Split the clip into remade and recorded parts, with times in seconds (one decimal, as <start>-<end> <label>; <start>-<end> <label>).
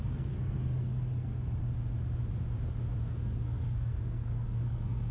0.0-1.4 remade; 1.4-3.0 recorded; 3.0-5.1 remade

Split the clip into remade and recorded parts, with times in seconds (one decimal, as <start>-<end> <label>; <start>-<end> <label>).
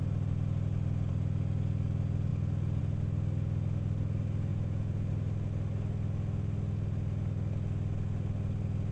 0.0-4.5 recorded; 4.5-5.1 remade; 5.1-8.9 recorded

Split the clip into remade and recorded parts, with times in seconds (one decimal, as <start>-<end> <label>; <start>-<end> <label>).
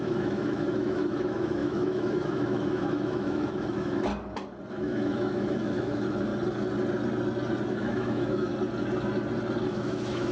0.0-4.1 remade; 4.1-4.7 recorded; 4.7-6.3 remade; 6.3-7.7 recorded; 7.7-8.5 remade; 8.5-9.7 recorded; 9.7-10.3 remade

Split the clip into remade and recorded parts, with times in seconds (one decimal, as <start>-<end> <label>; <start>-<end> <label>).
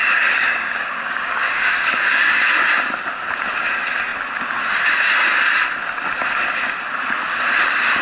0.0-2.4 remade; 2.4-8.0 recorded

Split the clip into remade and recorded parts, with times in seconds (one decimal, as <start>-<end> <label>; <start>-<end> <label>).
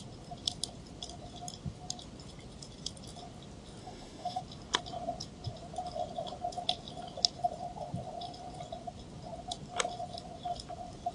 0.0-3.8 recorded; 3.8-4.4 remade; 4.4-11.1 recorded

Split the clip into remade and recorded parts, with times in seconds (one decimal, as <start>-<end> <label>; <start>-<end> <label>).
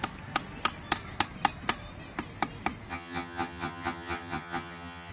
0.0-2.9 recorded; 2.9-5.1 remade